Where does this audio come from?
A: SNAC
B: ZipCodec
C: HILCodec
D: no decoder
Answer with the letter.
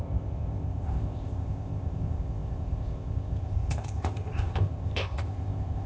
B